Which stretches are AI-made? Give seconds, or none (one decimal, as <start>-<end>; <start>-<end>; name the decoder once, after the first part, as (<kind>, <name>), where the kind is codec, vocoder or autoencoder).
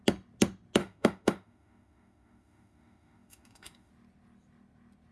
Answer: 0.8-3.9 (autoencoder, DAC-VAE)